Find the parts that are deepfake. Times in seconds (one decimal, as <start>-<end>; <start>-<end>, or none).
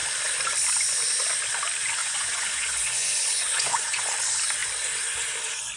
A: 2.0-4.0